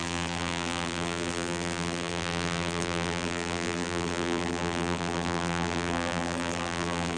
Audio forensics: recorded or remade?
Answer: remade